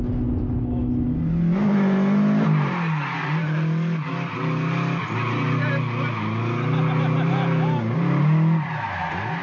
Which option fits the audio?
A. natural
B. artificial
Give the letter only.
A